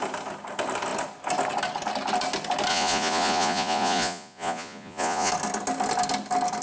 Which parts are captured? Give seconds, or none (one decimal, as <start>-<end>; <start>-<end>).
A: 0.0-2.7; 5.3-6.6